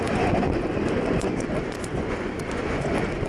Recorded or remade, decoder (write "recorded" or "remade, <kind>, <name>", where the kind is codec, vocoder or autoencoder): remade, vocoder, Vocos